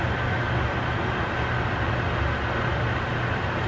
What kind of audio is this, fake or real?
real